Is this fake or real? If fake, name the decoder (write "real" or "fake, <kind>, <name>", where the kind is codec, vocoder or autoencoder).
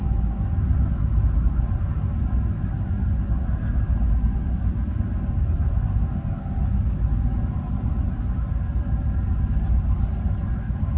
real